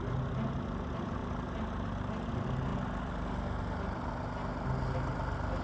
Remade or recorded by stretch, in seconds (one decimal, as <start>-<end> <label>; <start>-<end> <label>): 0.0-5.6 recorded